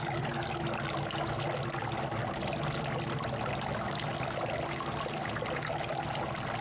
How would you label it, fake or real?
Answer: real